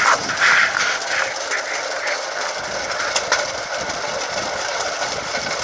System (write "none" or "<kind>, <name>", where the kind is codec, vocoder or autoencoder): none